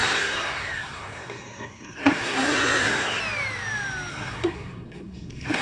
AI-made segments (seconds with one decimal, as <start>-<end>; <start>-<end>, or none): 0.0-3.2; 4.1-5.6